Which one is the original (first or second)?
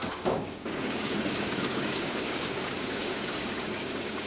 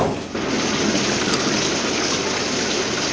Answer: second